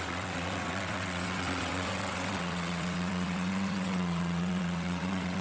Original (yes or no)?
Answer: no